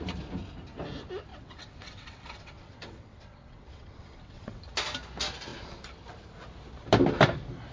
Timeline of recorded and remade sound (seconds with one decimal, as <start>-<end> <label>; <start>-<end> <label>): 0.0-1.3 recorded; 1.3-4.6 remade; 4.6-7.7 recorded